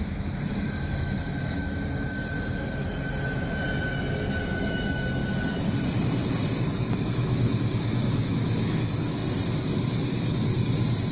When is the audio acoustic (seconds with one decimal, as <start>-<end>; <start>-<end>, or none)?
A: 3.6-4.4; 5.2-6.7; 9.2-11.1